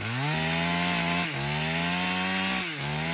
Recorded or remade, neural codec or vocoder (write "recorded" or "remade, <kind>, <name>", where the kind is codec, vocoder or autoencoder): recorded